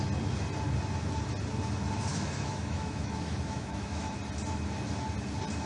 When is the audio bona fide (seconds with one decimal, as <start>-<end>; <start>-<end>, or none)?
0.0-2.1; 4.2-5.7